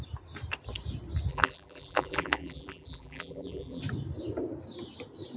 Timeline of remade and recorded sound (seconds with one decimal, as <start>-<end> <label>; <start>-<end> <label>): 0.0-1.3 recorded; 1.3-3.8 remade; 3.8-5.4 recorded